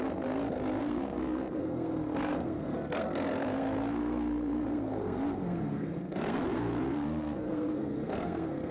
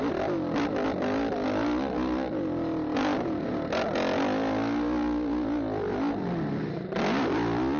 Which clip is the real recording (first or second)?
second